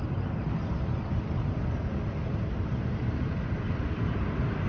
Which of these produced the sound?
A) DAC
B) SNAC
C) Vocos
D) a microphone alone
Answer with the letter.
D